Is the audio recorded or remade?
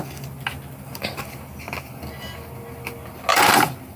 recorded